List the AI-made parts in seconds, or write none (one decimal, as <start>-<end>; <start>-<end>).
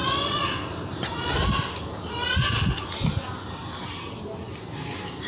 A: none